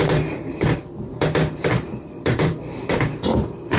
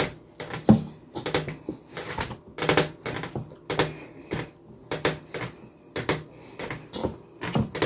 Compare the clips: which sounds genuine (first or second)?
second